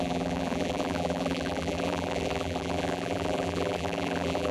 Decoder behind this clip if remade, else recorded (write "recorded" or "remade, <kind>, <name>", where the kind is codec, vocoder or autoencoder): remade, vocoder, BigVGAN v2